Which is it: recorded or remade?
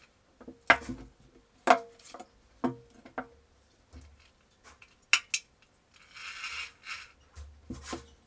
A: recorded